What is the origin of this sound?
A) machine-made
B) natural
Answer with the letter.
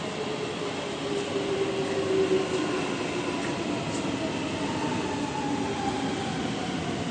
B